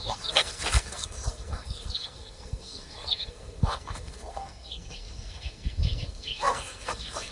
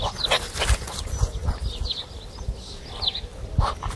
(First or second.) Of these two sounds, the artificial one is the first